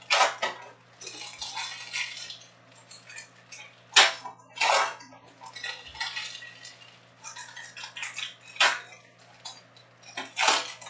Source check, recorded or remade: recorded